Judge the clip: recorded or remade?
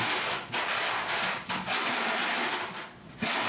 recorded